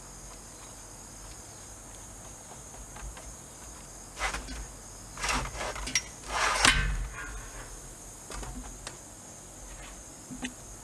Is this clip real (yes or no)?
yes